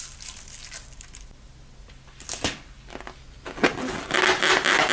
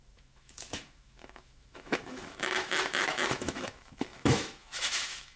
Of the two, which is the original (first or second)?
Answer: first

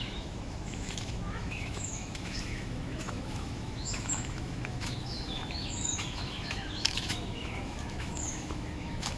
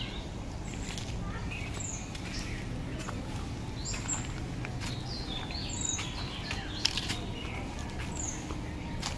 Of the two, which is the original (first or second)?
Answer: second